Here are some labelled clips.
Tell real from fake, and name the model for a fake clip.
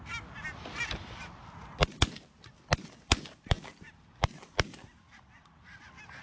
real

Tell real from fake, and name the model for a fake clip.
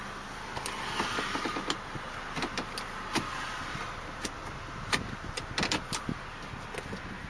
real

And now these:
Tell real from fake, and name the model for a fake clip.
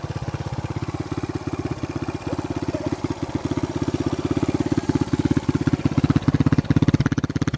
real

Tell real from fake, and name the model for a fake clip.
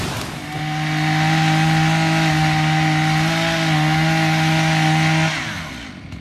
real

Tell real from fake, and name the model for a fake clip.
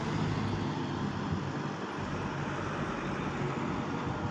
real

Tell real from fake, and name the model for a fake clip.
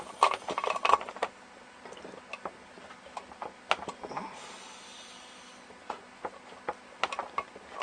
real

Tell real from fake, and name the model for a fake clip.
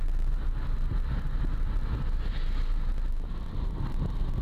real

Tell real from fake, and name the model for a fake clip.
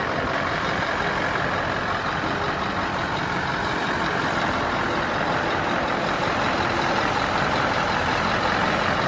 real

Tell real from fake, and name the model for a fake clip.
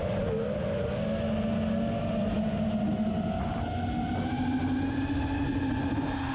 real